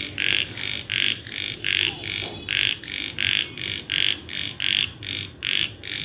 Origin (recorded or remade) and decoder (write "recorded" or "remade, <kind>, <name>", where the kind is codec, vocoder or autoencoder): recorded